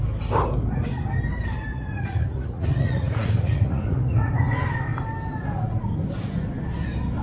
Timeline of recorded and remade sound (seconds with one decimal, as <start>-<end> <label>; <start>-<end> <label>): 0.0-1.7 recorded; 1.7-4.3 remade; 4.3-7.2 recorded